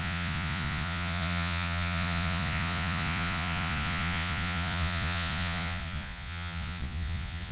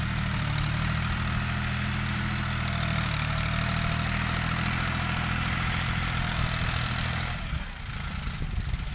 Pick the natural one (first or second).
second